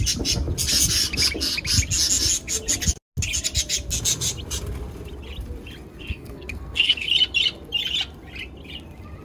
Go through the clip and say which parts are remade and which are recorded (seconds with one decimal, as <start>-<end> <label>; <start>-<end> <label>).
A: 0.0-6.0 recorded; 6.0-7.1 remade; 7.1-9.2 recorded